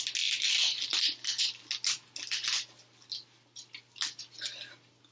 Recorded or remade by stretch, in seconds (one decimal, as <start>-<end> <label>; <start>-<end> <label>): 0.0-5.1 recorded